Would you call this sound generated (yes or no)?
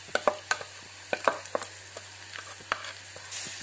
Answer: no